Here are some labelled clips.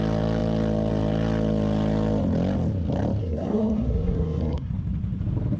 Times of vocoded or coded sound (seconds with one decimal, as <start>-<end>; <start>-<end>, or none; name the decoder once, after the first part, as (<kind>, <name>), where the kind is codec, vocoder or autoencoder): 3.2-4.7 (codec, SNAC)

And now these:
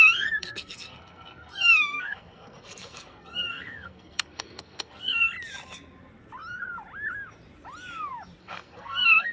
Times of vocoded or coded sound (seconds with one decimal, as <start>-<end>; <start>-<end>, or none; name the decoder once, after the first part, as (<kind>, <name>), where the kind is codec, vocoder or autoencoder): 0.0-5.3 (codec, SNAC); 8.4-9.3

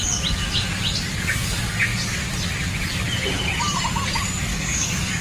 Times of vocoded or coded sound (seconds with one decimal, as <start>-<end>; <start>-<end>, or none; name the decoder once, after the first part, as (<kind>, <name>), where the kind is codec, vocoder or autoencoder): 4.5-5.2 (codec, DAC)

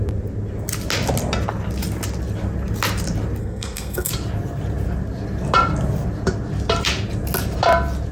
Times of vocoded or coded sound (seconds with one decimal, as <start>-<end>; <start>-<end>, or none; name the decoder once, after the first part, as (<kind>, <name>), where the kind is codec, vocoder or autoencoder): 3.4-4.1 (codec, SNAC)